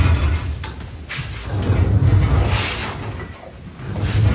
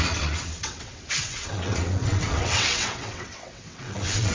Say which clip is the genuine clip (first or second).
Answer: first